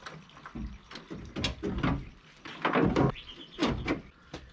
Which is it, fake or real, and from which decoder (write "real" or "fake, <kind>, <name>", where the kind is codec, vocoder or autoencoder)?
real